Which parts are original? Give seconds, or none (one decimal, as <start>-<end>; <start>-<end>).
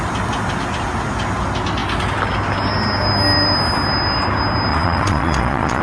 0.0-4.7